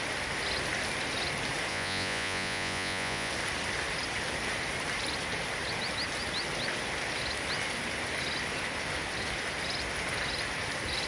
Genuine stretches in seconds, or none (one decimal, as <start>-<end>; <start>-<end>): 0.0-1.7; 3.3-11.1